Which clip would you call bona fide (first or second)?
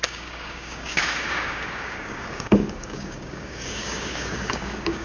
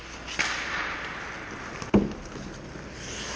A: second